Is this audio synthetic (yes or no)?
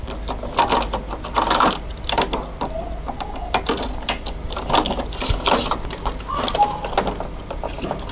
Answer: no